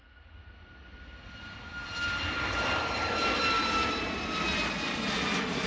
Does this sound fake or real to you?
real